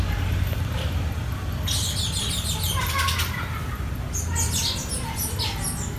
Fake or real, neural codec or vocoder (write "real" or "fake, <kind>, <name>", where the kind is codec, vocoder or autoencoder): real